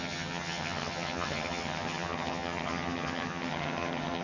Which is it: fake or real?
fake